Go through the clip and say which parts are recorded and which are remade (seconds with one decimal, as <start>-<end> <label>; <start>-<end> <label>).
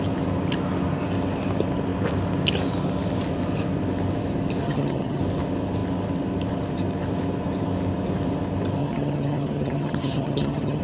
0.0-4.6 recorded; 4.6-5.2 remade; 5.2-8.8 recorded; 8.8-10.8 remade